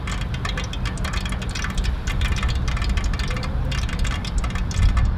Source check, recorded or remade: recorded